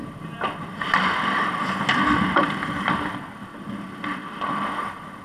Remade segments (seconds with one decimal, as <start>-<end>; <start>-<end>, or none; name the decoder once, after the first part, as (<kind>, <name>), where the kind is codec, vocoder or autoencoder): none